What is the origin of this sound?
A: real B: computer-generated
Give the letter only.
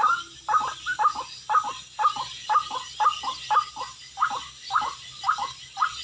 A